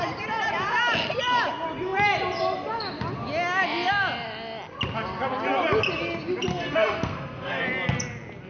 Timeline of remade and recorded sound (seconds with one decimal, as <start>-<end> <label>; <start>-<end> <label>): 0.0-6.5 recorded; 6.5-7.6 remade; 7.6-8.5 recorded